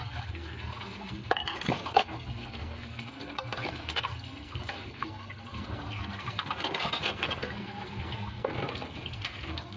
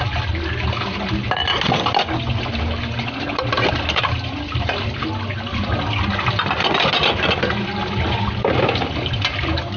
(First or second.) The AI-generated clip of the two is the first